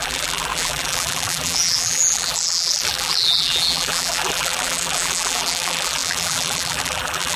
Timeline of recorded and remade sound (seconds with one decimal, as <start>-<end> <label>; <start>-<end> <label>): 0.0-7.4 remade